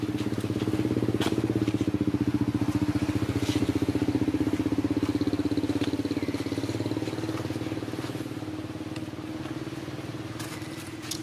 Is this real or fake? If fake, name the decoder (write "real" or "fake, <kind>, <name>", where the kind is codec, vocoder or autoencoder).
real